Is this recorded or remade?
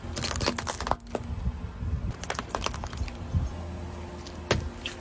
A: recorded